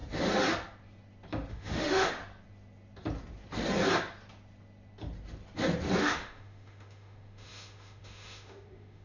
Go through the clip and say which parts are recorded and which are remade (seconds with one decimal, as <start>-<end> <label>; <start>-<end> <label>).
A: 0.0-1.5 recorded; 1.5-2.2 remade; 2.2-6.0 recorded; 6.0-9.0 remade